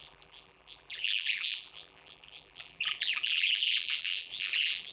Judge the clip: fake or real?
fake